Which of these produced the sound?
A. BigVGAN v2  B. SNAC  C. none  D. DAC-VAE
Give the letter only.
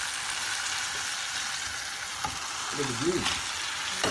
C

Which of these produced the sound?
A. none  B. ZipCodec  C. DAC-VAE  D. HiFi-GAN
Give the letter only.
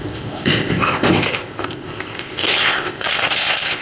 B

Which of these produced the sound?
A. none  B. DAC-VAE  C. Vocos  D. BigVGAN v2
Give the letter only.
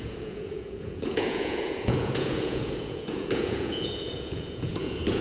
C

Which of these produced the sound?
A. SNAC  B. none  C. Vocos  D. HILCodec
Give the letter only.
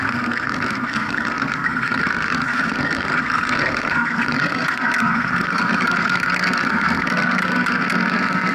A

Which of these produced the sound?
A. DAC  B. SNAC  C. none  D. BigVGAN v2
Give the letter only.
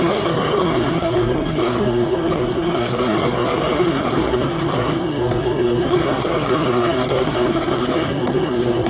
B